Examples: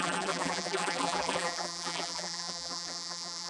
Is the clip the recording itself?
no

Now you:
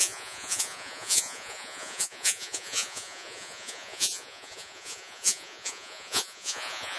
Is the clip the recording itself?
no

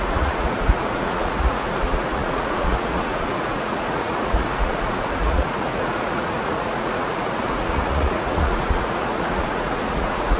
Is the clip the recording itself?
no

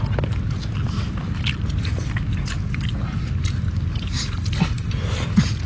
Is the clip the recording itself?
yes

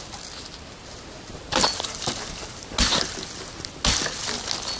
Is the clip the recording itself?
yes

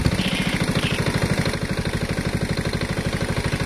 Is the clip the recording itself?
yes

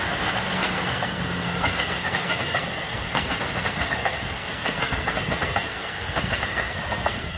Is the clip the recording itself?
no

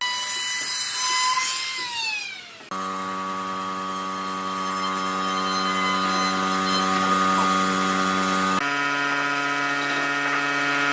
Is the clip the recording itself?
yes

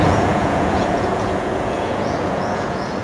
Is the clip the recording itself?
no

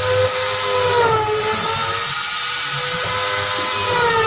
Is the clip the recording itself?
yes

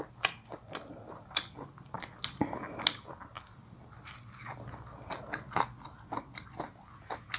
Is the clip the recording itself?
yes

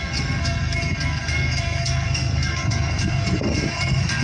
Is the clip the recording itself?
no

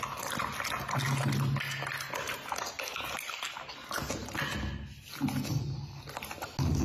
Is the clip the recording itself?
yes